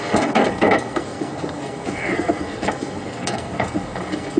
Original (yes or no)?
no